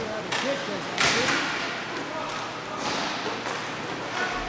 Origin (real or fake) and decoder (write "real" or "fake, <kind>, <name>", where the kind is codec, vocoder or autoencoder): real